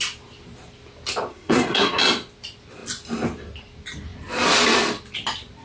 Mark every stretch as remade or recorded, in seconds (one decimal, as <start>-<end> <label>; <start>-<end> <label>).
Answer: 0.0-1.3 recorded; 1.3-2.0 remade; 2.0-5.6 recorded